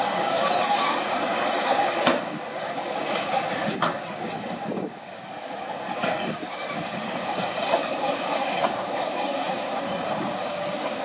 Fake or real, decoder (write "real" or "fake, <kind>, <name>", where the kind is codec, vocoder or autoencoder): fake, codec, DAC